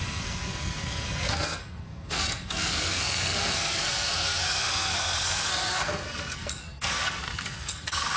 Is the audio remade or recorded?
remade